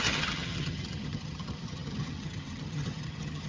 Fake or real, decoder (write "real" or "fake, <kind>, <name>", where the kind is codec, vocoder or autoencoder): fake, vocoder, HiFi-GAN